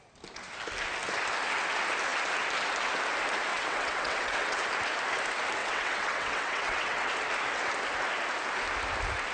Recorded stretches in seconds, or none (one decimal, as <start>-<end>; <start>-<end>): 0.0-3.5; 4.6-5.6; 7.1-9.3